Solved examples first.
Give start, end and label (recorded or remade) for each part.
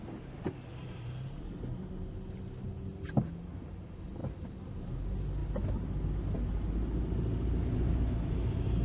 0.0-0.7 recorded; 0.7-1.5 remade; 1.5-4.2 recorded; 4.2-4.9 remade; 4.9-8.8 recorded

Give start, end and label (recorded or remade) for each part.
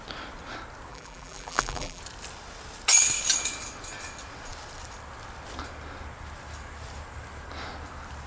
0.0-0.9 recorded; 0.9-2.0 remade; 2.0-8.3 recorded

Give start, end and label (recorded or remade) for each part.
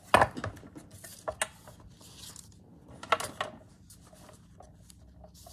0.0-5.5 recorded